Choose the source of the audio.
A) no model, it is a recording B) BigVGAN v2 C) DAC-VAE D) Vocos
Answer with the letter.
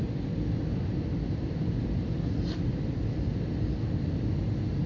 A